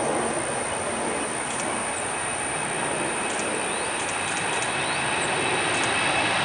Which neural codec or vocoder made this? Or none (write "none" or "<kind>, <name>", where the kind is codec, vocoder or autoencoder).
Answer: none